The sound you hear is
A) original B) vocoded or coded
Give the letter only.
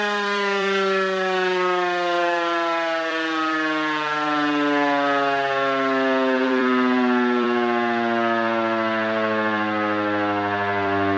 B